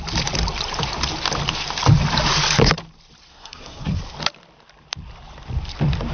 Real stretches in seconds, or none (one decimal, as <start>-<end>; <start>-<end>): 0.0-3.3; 4.0-6.1